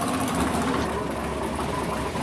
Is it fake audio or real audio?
real